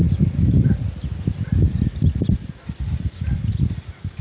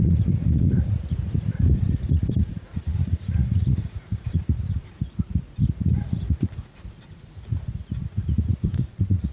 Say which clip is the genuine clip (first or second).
first